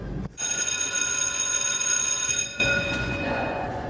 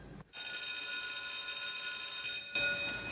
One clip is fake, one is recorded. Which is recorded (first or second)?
second